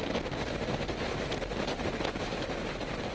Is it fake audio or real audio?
fake